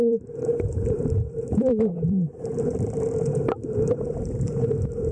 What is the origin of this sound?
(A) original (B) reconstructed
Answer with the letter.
B